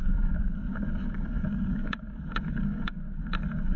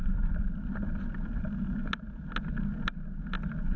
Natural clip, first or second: second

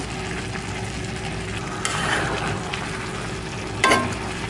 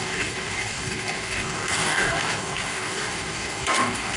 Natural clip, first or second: first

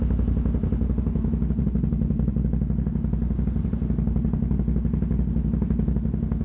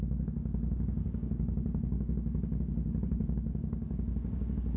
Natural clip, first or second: first